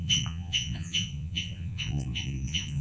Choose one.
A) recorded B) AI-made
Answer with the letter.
B